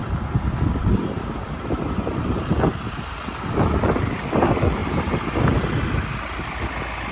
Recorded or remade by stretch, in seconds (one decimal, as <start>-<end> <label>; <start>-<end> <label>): 0.0-4.3 remade; 4.3-7.1 recorded